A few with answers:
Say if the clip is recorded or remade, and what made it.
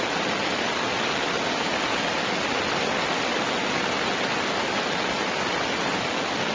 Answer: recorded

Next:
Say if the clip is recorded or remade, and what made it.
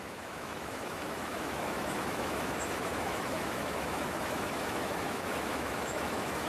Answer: remade, autoencoder, DAC-VAE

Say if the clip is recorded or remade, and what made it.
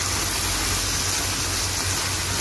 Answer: recorded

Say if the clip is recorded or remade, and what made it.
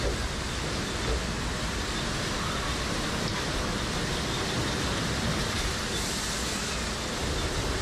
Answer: recorded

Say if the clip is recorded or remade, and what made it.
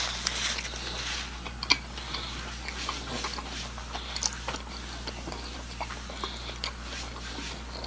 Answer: recorded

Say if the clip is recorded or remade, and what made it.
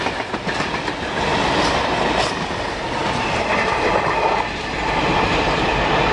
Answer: recorded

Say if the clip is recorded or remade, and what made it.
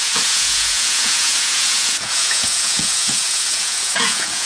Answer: remade, vocoder, Vocos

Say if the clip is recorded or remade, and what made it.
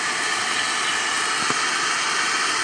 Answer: recorded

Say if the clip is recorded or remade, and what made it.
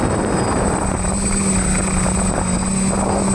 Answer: recorded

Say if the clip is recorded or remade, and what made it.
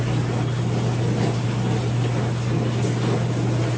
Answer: recorded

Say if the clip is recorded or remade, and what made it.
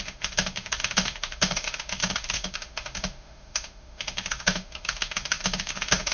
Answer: remade, autoencoder, DAC-VAE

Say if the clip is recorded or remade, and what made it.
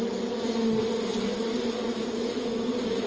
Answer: recorded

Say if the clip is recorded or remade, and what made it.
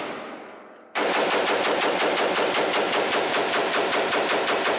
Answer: recorded